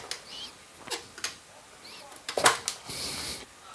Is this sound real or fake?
real